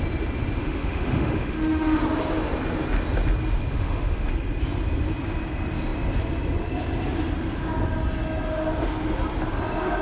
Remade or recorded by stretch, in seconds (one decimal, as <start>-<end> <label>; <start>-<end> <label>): 0.0-0.6 recorded; 0.6-2.0 remade; 2.0-3.7 recorded; 3.7-4.3 remade; 4.3-10.0 recorded